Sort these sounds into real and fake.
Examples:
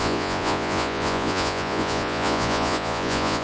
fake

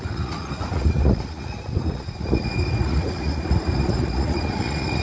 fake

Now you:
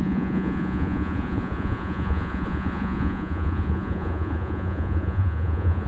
fake